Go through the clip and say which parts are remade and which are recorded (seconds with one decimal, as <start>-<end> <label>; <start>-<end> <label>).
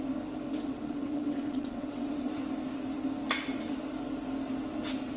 0.0-0.6 recorded; 0.6-2.3 remade; 2.3-5.2 recorded